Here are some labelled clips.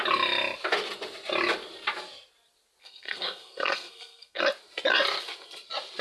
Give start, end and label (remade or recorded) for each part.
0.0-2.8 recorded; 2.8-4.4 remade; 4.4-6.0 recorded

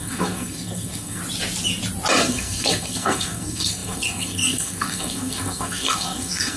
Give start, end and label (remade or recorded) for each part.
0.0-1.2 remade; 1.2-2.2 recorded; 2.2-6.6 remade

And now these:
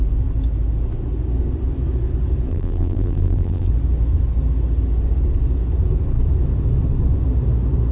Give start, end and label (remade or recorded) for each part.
0.0-2.5 recorded; 2.5-3.7 remade; 3.7-7.9 recorded

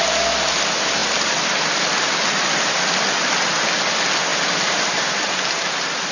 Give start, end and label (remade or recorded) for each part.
0.0-1.0 recorded; 1.0-3.8 remade; 3.8-4.3 recorded; 4.3-5.1 remade; 5.1-6.1 recorded

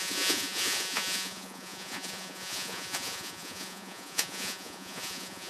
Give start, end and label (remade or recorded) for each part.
0.0-5.5 remade

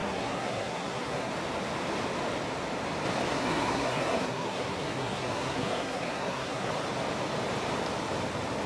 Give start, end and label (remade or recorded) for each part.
0.0-1.3 remade; 1.3-3.3 recorded; 3.3-6.7 remade; 6.7-8.7 recorded

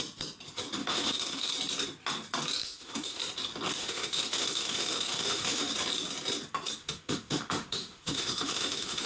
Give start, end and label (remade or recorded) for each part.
0.0-0.8 recorded; 0.8-1.5 remade; 1.5-2.6 recorded; 2.6-3.2 remade; 3.2-3.8 recorded; 3.8-5.7 remade; 5.7-6.8 recorded; 6.8-9.1 remade